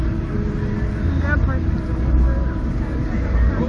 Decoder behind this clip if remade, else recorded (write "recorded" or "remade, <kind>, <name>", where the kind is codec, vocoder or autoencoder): recorded